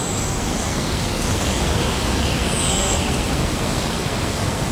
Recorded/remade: remade